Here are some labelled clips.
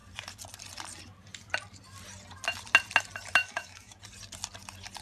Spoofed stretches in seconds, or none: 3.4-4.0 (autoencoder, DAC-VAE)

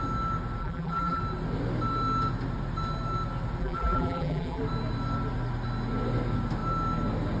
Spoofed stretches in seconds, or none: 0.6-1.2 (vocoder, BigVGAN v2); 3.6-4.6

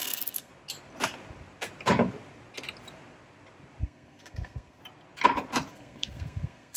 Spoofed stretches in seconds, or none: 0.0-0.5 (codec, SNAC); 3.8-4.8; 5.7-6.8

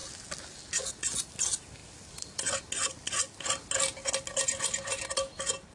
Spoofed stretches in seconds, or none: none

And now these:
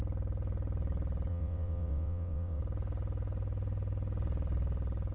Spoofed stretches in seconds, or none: 1.3-2.6 (vocoder, WaveNeXt)

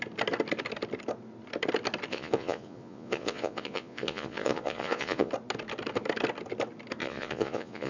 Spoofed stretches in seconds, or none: 2.1-5.3 (vocoder, Vocos); 7.0-7.9

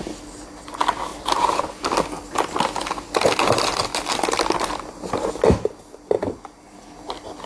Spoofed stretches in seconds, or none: 1.1-1.7 (vocoder, BigVGAN v2)

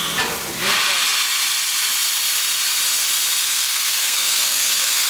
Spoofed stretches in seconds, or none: 3.4-5.1 (codec, SNAC)